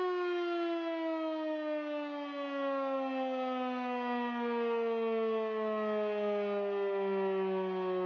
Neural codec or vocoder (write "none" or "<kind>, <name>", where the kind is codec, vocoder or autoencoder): none